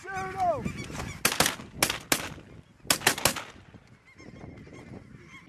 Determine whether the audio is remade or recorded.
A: recorded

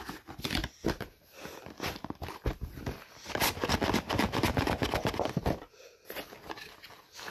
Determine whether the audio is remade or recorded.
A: recorded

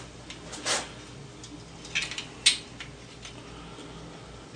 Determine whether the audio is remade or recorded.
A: recorded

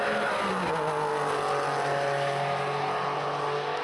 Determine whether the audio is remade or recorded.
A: recorded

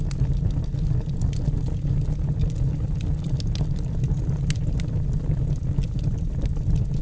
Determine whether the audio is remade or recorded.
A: recorded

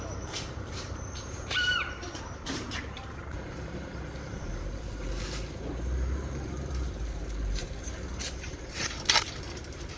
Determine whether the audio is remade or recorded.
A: remade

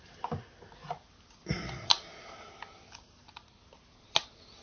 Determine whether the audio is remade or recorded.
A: recorded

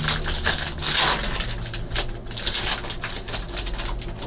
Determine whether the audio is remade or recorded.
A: recorded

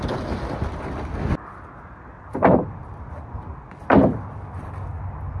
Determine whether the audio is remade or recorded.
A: recorded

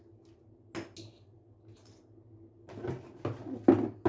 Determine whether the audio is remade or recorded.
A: recorded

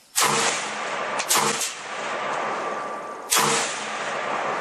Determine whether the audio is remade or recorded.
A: recorded